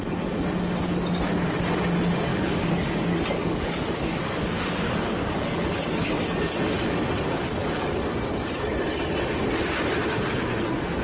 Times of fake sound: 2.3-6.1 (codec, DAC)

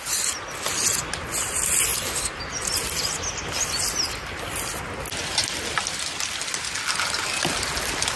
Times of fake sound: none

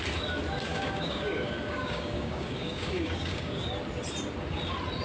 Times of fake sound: 0.7-3.7 (codec, DAC)